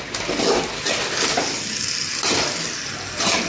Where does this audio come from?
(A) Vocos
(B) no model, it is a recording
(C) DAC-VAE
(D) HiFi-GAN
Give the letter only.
B